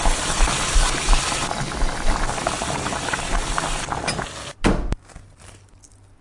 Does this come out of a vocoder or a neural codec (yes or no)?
no